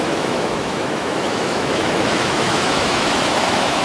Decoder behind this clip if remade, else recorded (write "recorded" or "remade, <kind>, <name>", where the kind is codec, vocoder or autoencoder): remade, autoencoder, DAC-VAE